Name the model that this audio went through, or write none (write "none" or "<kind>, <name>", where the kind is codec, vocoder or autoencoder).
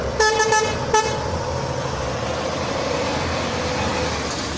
none